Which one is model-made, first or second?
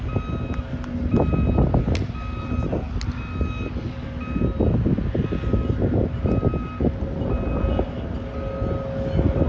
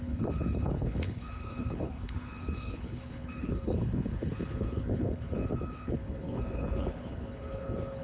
second